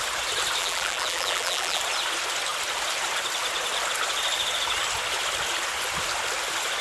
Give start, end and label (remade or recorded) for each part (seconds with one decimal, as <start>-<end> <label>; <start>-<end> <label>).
0.0-0.6 recorded; 0.6-1.8 remade; 1.8-6.8 recorded